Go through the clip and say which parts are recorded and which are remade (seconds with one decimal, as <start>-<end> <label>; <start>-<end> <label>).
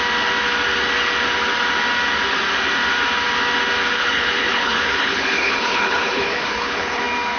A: 0.0-4.0 recorded; 4.0-7.0 remade; 7.0-7.4 recorded